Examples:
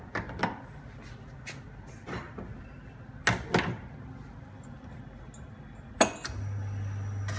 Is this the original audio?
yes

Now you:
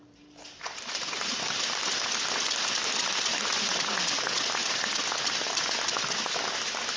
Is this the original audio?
yes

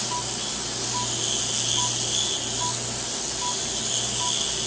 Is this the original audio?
yes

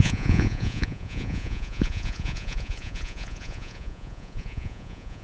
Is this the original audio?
no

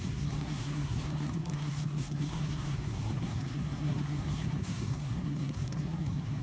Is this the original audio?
no